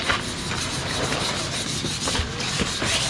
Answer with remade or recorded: recorded